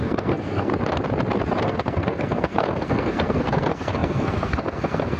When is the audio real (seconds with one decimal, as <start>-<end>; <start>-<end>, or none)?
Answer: 0.7-1.6